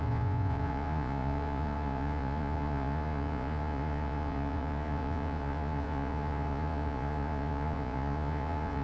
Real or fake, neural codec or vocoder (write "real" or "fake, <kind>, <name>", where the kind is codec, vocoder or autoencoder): fake, vocoder, Vocos